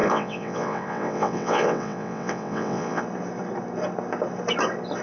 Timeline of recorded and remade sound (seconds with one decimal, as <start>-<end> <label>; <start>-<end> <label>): 0.0-3.0 remade; 3.0-5.0 recorded